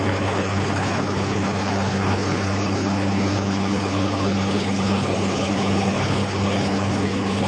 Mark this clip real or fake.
fake